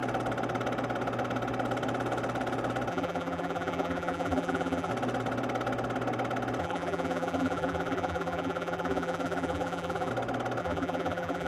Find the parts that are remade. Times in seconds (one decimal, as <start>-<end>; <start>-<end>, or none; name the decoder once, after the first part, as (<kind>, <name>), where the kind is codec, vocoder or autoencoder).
2.9-4.9 (vocoder, BigVGAN v2); 6.6-10.1; 10.6-11.5